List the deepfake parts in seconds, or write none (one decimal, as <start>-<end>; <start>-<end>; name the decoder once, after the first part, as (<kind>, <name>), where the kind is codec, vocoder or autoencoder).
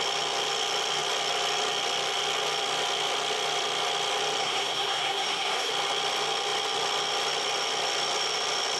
4.4-5.7 (codec, SNAC)